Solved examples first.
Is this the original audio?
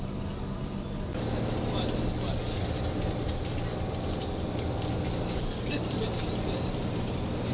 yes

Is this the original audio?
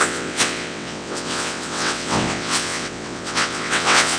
no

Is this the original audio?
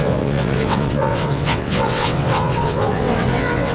no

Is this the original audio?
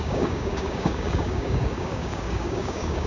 no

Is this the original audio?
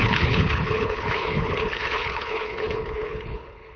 no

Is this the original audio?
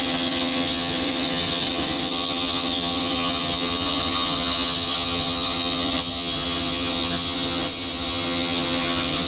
no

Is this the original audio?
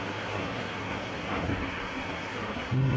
no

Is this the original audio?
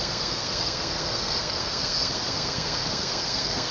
no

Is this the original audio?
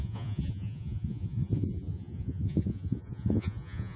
no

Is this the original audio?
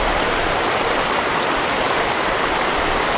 yes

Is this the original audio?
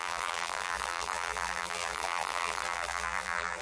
no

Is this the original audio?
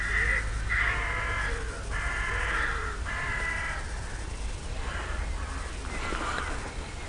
yes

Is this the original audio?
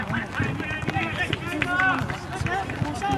yes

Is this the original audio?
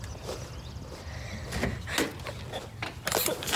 yes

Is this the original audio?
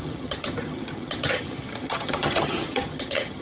no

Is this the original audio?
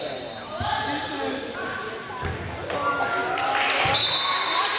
yes